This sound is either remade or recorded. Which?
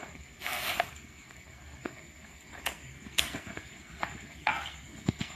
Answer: remade